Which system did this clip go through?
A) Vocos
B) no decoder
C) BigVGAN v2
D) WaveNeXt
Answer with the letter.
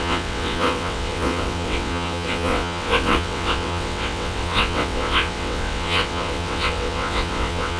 D